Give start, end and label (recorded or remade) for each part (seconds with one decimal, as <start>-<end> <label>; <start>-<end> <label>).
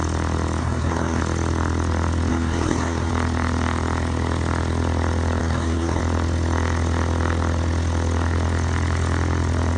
0.0-0.6 recorded; 0.6-1.2 remade; 1.2-2.3 recorded; 2.3-3.1 remade; 3.1-5.4 recorded; 5.4-6.0 remade; 6.0-9.8 recorded